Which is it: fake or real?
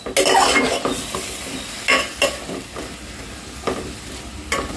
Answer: real